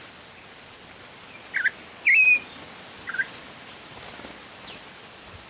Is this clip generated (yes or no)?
no